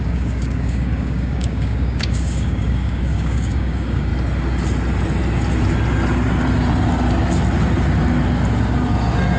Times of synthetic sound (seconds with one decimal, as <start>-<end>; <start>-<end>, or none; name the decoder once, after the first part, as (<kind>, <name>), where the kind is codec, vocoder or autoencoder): 0.0-4.1 (codec, DAC)